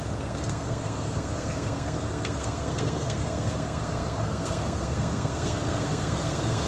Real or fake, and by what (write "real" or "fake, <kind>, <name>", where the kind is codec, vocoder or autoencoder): fake, codec, SNAC